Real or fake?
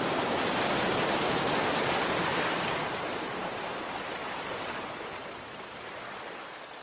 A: fake